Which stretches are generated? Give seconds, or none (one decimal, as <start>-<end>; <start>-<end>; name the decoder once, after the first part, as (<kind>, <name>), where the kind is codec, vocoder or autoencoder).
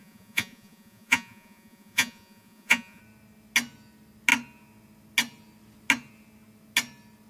0.0-3.0 (vocoder, Vocos)